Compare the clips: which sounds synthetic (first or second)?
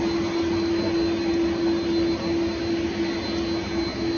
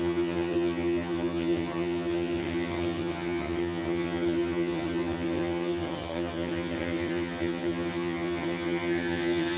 second